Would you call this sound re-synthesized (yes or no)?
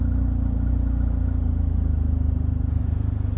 no